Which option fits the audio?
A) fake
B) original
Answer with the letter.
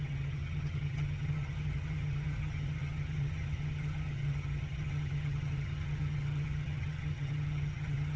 A